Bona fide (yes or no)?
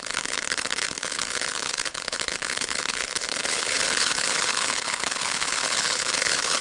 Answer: no